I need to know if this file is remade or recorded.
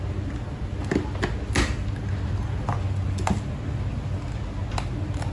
recorded